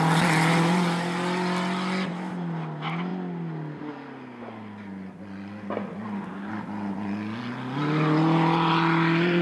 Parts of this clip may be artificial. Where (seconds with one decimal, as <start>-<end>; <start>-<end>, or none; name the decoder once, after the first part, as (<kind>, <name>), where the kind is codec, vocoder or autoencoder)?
none

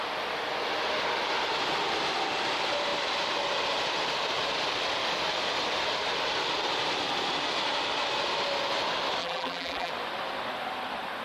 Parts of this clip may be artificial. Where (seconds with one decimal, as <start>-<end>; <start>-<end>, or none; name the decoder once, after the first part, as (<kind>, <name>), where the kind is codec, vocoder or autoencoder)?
9.2-9.9 (vocoder, BigVGAN v2)

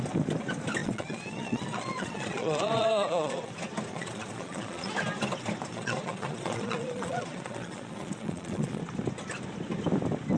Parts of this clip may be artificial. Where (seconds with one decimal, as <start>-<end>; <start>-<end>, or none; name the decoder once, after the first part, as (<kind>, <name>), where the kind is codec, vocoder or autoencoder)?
0.8-3.5 (vocoder, Vocos); 3.9-4.9; 5.7-8.8

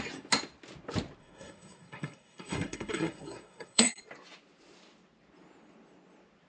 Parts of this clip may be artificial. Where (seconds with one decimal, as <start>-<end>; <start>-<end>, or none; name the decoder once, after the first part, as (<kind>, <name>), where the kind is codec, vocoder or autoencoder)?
1.2-4.0 (codec, SNAC)

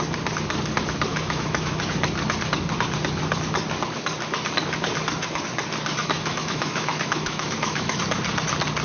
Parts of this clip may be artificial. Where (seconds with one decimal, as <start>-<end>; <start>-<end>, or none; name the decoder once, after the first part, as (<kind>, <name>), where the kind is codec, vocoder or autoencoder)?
1.1-1.8 (autoencoder, DAC-VAE); 6.0-8.0

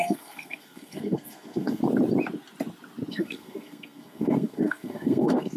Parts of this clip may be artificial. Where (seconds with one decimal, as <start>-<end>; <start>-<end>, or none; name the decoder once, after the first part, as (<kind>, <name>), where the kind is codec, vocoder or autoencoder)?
0.0-1.8 (codec, SNAC); 3.1-5.6